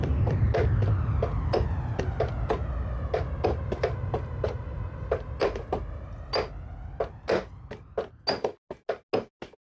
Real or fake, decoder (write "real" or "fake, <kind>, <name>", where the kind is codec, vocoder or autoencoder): real